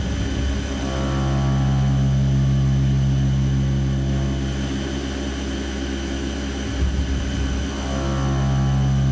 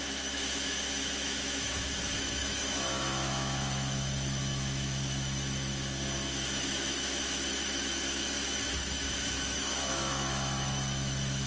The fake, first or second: second